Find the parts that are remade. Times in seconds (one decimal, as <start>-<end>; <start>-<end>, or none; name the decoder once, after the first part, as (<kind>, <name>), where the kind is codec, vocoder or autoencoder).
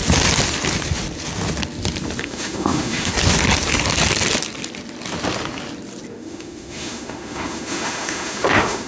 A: 2.2-3.1 (autoencoder, DAC-VAE); 6.1-8.9